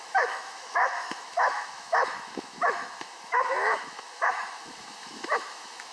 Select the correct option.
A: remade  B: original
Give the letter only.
A